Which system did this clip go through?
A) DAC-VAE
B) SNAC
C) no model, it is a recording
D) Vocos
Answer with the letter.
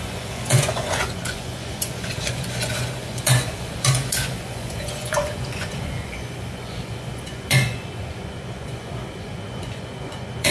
D